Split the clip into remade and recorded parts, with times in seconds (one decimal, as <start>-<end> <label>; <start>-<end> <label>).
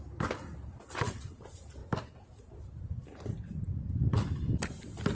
0.0-5.1 recorded